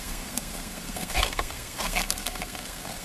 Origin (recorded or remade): remade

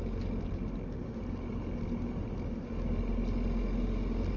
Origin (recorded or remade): recorded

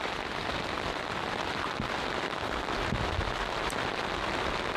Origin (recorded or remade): recorded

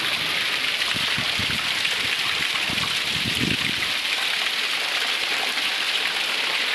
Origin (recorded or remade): recorded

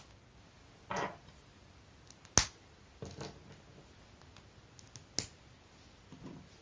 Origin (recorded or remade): recorded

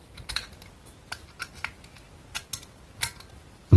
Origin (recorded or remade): recorded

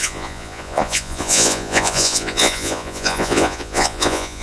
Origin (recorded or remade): remade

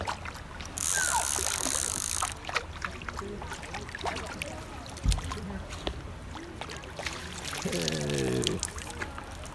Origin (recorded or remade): recorded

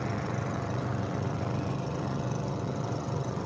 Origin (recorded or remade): remade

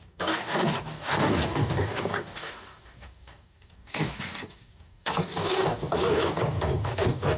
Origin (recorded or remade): remade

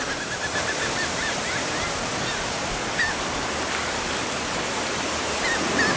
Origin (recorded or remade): recorded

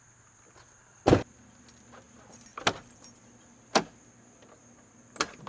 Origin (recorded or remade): recorded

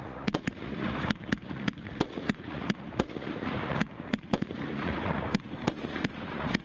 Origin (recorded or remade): remade